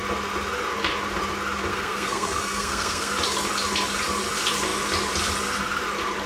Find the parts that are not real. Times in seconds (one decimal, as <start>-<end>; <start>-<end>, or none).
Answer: 1.7-3.1